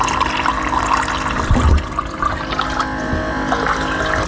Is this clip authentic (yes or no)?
yes